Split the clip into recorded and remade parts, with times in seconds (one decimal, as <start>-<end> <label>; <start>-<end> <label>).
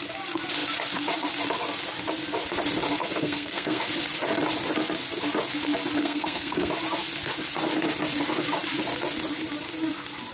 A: 0.0-3.0 recorded; 3.0-3.8 remade; 3.8-6.0 recorded; 6.0-6.7 remade; 6.7-10.3 recorded